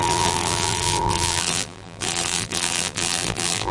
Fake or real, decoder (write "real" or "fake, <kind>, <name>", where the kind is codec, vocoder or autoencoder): fake, vocoder, BigVGAN v2